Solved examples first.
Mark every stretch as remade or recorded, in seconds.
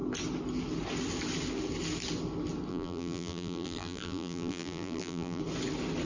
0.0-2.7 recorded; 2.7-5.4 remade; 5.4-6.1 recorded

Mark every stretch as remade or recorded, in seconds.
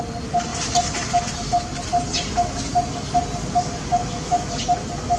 0.0-4.0 recorded; 4.0-4.6 remade; 4.6-5.2 recorded